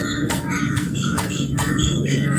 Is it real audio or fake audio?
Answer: fake